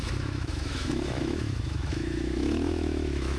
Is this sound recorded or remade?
remade